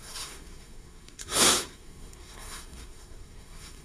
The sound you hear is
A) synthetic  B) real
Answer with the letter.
A